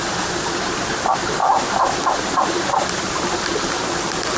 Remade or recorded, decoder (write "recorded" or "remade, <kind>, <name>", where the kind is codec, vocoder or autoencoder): recorded